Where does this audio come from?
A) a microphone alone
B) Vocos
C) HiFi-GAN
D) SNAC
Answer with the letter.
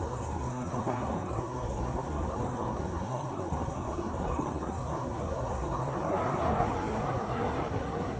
D